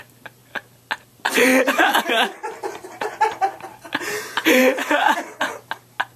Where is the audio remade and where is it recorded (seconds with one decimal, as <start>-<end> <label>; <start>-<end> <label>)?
0.0-0.4 remade; 0.4-1.1 recorded; 1.1-1.5 remade; 1.5-2.1 recorded; 2.1-4.6 remade; 4.6-6.2 recorded